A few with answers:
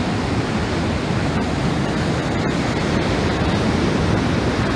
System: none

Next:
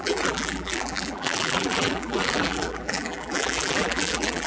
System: vocoder, BigVGAN v2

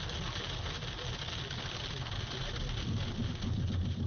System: none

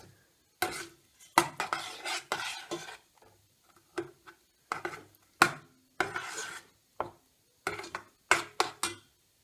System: none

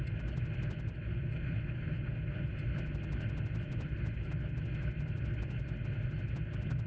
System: none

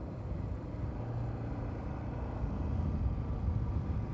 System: none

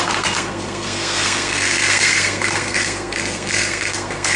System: codec, SNAC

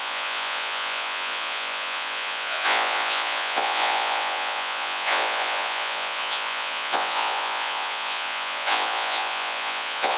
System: vocoder, Vocos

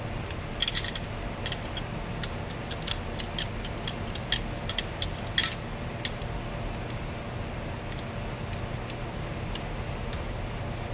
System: none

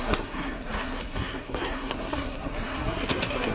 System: codec, SNAC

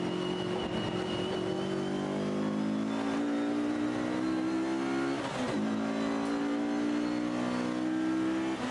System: none